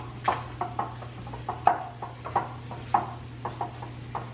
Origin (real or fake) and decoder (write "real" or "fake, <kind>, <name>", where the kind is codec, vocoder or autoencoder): real